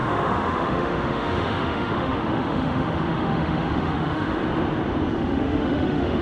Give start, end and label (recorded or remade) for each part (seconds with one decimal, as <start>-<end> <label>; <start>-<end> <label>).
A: 0.0-4.4 remade; 4.4-5.1 recorded; 5.1-6.2 remade